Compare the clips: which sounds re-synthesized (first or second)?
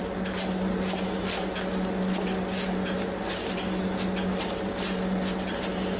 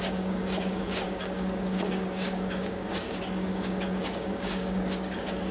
second